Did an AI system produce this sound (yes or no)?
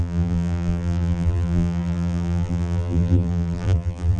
yes